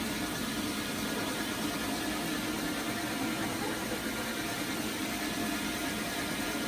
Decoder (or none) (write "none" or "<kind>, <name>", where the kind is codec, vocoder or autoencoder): none